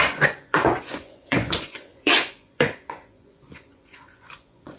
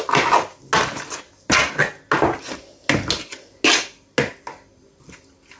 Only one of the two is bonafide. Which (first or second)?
second